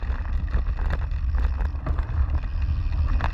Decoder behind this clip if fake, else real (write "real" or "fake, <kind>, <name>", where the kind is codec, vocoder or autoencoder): real